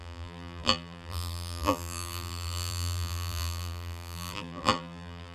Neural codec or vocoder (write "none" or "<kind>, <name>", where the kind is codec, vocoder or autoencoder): vocoder, BigVGAN v2